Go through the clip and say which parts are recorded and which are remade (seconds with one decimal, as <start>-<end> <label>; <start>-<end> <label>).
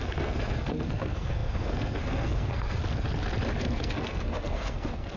0.0-2.8 remade; 2.8-3.6 recorded; 3.6-5.2 remade